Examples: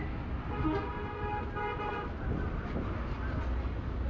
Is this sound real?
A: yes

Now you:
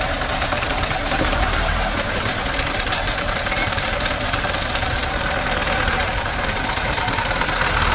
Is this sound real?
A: no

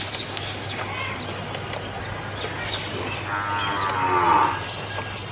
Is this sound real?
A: yes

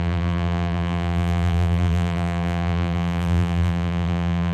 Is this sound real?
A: no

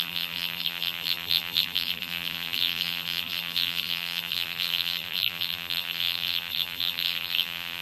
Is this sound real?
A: no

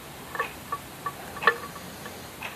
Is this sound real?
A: yes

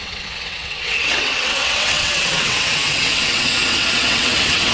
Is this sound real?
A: no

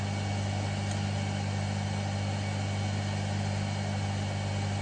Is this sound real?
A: yes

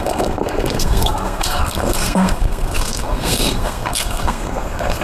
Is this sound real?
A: no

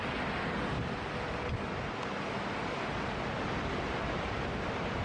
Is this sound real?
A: yes